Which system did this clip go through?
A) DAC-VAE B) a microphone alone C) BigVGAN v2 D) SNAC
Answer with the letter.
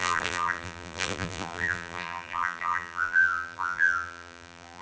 C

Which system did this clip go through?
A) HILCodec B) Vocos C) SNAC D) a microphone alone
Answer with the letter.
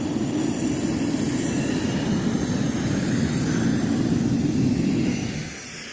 D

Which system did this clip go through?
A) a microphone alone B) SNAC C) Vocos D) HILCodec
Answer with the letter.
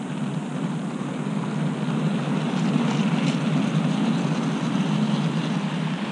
A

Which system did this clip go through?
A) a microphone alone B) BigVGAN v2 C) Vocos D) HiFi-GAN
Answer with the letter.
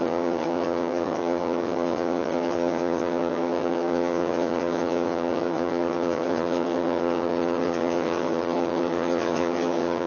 D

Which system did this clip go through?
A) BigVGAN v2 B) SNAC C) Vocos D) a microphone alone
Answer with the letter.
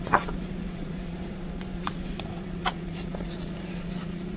C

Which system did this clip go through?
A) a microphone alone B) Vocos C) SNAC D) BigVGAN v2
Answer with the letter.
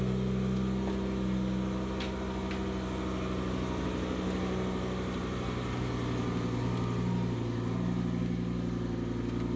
A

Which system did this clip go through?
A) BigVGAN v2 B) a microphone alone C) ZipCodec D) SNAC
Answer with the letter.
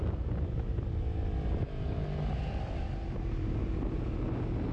B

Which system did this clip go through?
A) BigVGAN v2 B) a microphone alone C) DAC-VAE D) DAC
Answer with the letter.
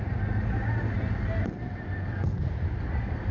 B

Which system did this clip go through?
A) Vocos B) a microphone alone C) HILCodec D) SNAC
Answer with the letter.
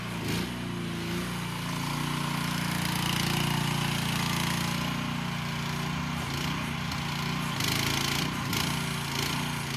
B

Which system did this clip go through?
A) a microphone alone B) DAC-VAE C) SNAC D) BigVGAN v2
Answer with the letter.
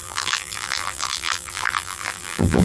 D